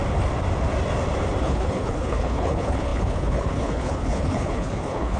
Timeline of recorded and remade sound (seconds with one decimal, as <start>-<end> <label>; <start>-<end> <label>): 0.0-1.4 recorded; 1.4-5.2 remade